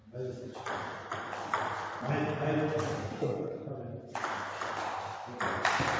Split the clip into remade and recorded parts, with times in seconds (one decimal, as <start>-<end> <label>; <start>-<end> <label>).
0.0-3.0 recorded; 3.0-3.7 remade; 3.7-6.0 recorded